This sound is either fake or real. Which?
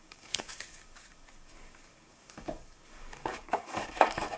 fake